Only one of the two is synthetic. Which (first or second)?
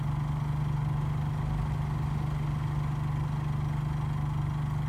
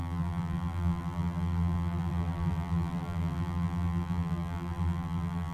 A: second